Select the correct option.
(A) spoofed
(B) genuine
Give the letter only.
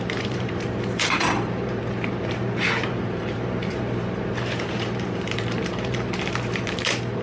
A